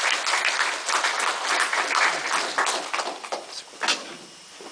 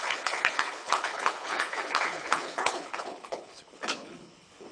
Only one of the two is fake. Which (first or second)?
second